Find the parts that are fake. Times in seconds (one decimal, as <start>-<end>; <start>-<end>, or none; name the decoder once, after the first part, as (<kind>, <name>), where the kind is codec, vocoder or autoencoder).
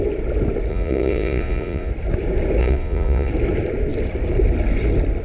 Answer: 0.7-1.9 (vocoder, Vocos); 2.6-3.3